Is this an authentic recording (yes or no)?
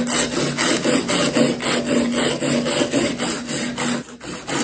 yes